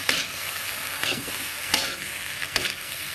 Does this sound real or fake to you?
fake